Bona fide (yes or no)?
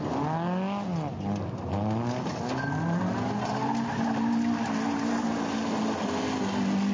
yes